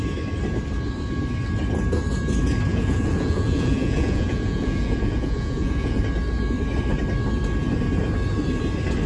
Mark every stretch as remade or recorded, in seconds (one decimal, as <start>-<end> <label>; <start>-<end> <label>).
0.0-2.7 recorded; 2.7-6.0 remade; 6.0-9.1 recorded